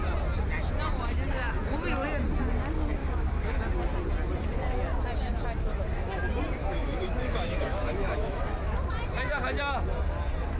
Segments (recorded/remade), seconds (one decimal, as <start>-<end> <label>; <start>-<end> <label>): 0.0-3.0 recorded; 3.0-3.6 remade; 3.6-6.6 recorded; 6.6-8.4 remade; 8.4-10.6 recorded